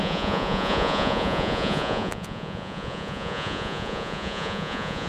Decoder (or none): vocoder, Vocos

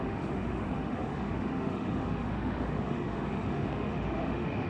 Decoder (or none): autoencoder, DAC-VAE